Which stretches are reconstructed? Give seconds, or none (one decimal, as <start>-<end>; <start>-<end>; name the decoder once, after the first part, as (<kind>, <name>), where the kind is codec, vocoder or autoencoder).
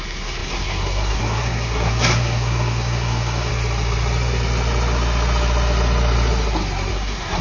0.0-3.5 (codec, SNAC); 6.9-7.4